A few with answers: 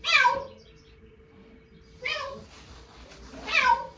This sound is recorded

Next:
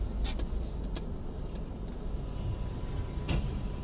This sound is recorded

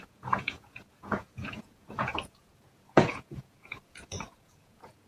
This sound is remade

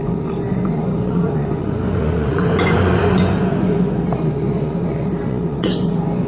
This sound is remade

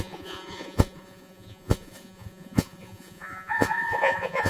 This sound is remade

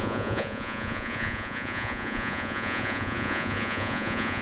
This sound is remade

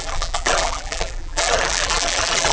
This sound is remade